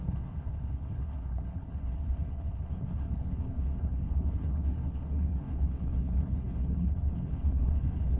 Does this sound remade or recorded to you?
remade